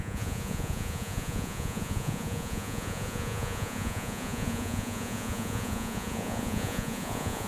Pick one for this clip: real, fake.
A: fake